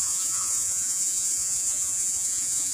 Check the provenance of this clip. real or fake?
fake